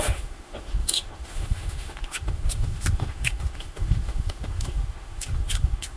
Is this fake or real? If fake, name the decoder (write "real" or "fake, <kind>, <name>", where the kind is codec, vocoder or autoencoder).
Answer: fake, autoencoder, DAC-VAE